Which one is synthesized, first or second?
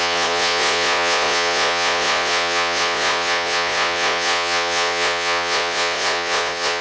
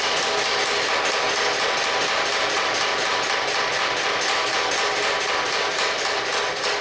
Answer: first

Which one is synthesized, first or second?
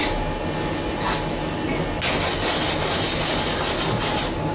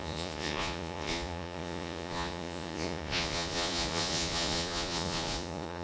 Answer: second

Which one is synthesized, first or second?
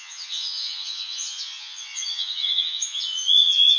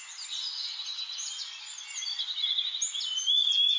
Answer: first